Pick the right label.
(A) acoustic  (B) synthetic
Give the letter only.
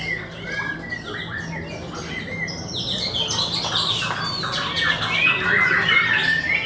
A